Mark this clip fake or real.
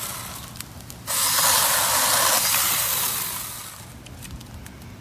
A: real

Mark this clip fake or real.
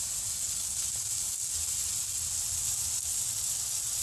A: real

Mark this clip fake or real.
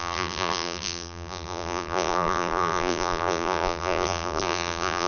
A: fake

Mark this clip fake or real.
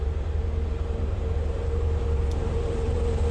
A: fake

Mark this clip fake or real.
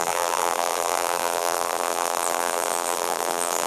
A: fake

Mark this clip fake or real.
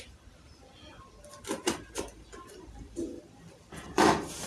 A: fake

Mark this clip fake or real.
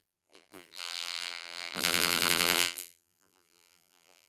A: fake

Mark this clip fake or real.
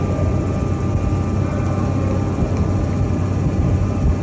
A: real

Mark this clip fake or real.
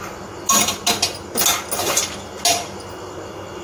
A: real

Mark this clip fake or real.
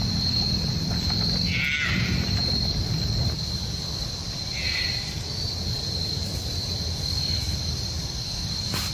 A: fake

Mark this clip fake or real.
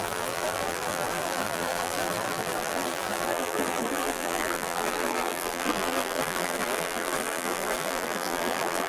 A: fake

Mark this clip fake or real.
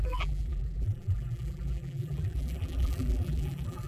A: fake